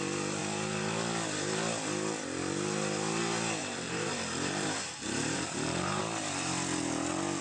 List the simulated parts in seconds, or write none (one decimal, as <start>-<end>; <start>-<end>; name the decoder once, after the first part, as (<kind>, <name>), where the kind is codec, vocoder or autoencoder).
3.6-6.0 (vocoder, BigVGAN v2)